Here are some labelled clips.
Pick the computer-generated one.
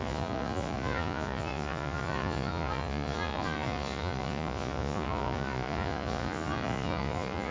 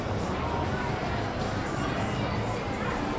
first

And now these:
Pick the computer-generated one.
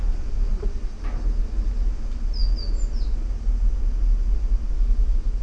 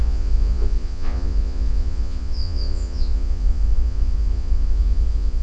second